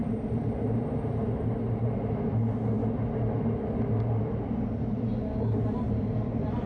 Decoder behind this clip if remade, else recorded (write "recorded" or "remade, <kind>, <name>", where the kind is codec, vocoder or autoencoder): recorded